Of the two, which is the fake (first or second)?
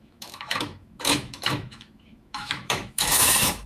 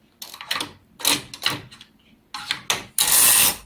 first